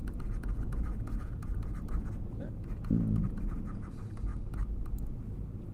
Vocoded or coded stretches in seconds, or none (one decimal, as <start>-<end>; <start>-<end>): 0.0-1.4; 2.5-4.3

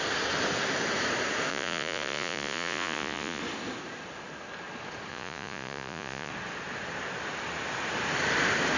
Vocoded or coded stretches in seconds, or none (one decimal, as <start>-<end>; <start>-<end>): 1.5-3.4; 5.1-6.3

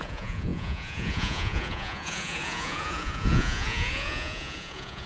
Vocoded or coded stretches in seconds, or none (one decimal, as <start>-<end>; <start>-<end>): 0.0-5.1